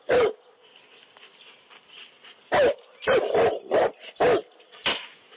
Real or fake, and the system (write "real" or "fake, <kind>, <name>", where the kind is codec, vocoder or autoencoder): real